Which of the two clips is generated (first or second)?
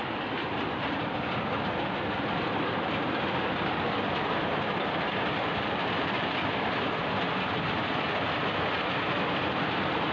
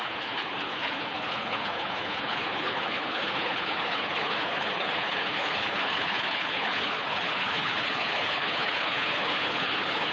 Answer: second